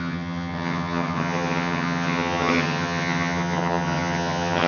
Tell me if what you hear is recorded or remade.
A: remade